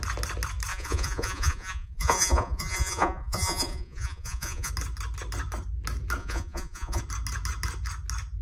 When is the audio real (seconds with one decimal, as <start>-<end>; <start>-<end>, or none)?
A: 0.0-0.7; 4.7-6.2; 7.0-8.4